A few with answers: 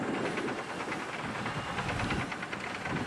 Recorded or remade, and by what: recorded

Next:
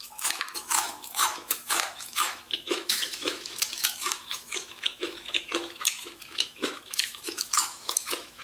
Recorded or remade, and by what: remade, autoencoder, DAC-VAE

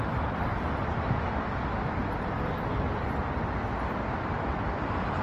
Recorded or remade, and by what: recorded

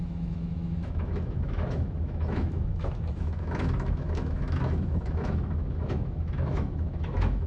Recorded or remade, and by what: remade, autoencoder, DAC-VAE